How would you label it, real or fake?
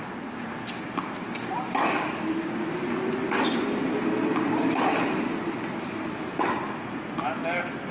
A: real